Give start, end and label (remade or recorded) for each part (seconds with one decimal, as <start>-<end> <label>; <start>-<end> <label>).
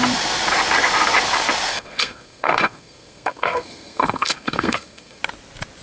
0.0-1.7 recorded; 1.7-5.2 remade; 5.2-5.8 recorded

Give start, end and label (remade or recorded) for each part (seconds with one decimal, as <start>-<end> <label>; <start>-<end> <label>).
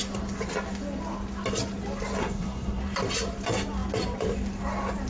0.0-2.2 recorded; 2.2-2.8 remade; 2.8-5.1 recorded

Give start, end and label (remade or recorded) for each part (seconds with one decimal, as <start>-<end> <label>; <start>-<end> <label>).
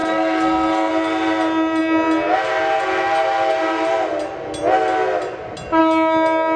0.0-0.9 remade; 0.9-6.6 recorded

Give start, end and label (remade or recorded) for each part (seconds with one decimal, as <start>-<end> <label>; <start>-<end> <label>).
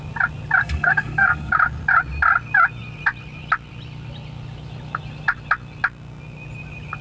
0.0-0.6 recorded; 0.6-1.5 remade; 1.5-7.0 recorded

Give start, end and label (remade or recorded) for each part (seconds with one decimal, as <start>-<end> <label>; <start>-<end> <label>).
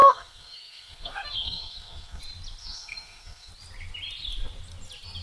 0.0-2.2 remade; 2.2-2.6 recorded; 2.6-3.5 remade; 3.5-5.2 recorded